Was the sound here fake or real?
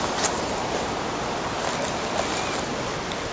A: real